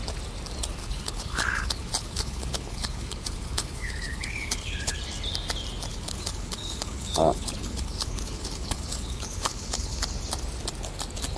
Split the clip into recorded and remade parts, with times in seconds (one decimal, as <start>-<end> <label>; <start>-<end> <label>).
0.0-0.8 recorded; 0.8-5.0 remade; 5.0-5.9 recorded; 5.9-10.0 remade; 10.0-11.4 recorded